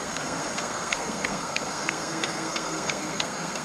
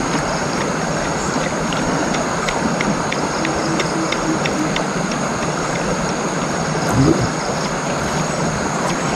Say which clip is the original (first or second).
second